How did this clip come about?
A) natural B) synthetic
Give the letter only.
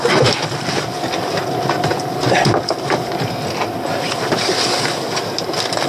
A